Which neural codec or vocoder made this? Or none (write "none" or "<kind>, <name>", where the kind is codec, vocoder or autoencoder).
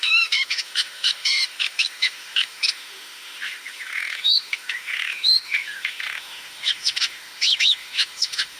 autoencoder, DAC-VAE